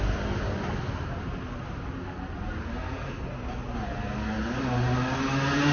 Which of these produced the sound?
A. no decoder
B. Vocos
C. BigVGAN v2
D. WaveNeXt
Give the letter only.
A